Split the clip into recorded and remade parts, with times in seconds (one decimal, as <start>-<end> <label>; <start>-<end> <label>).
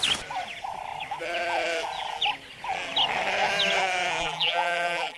0.0-4.2 recorded; 4.2-5.2 remade